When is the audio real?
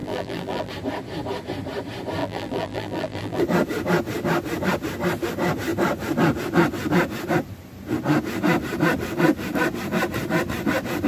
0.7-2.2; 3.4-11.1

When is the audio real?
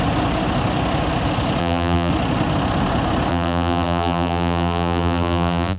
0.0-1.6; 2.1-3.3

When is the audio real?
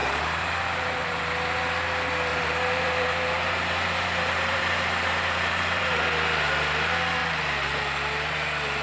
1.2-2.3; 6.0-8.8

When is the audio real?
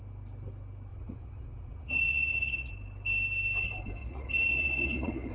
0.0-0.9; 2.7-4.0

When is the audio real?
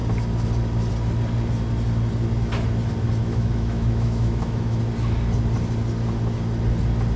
0.0-3.2; 4.8-7.2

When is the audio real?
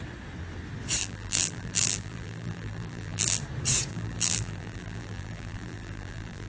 0.0-1.0; 3.4-3.9